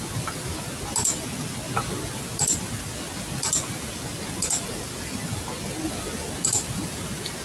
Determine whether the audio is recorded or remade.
recorded